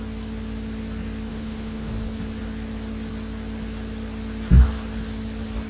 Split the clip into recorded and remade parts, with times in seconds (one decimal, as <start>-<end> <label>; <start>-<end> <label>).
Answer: 0.0-1.3 recorded; 1.3-1.9 remade; 1.9-5.7 recorded